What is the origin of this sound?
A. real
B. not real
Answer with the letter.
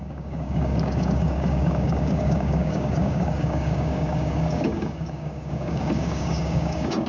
B